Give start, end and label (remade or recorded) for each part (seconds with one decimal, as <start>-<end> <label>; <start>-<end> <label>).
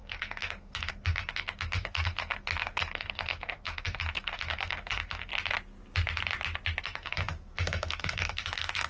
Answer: 0.0-5.3 remade; 5.3-6.8 recorded; 6.8-8.9 remade